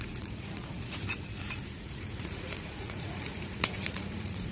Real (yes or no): no